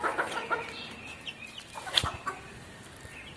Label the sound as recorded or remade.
remade